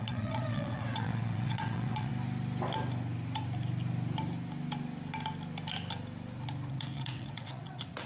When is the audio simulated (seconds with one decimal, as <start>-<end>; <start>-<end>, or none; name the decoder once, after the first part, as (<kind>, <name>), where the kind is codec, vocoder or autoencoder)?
0.0-2.1 (vocoder, WaveNeXt); 6.7-8.1